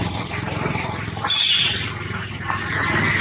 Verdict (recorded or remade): recorded